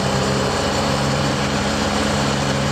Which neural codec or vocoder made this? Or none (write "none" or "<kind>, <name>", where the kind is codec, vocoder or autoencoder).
vocoder, BigVGAN v2